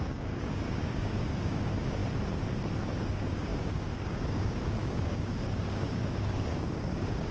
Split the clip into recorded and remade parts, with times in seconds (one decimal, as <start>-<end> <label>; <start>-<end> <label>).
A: 0.0-2.0 remade; 2.0-3.0 recorded; 3.0-7.3 remade